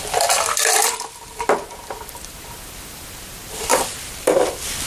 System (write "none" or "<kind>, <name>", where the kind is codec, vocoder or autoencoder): vocoder, BigVGAN v2